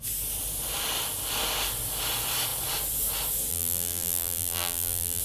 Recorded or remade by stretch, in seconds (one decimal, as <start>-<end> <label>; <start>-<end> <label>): 0.0-3.5 recorded; 3.5-5.2 remade